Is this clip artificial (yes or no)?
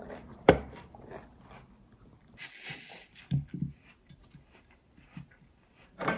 no